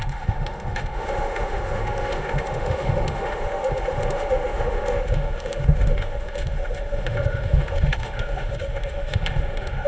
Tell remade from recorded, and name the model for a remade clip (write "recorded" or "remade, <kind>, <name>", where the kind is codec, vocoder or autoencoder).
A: remade, autoencoder, DAC-VAE